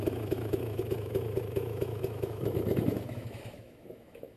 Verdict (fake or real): fake